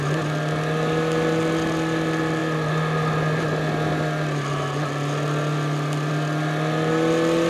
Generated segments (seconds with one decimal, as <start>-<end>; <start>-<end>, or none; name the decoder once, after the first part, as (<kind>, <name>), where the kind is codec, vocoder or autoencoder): none